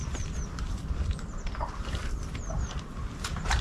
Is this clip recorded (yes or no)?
yes